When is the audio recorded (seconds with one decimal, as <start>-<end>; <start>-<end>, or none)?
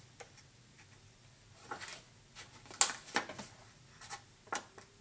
0.0-5.0